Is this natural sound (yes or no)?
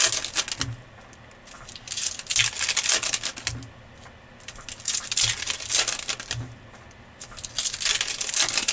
yes